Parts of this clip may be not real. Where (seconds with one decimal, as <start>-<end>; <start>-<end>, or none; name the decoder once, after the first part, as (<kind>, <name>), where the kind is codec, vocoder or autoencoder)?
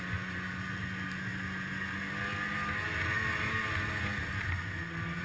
none